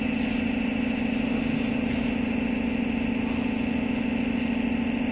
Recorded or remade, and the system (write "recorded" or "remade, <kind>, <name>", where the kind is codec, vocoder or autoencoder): recorded